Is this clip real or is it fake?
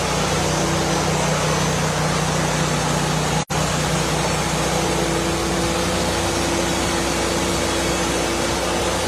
real